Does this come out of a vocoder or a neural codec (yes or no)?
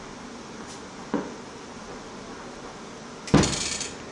no